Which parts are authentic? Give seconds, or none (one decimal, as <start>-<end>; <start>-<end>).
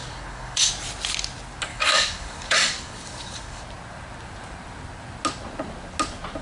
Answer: 0.7-1.7; 3.6-6.4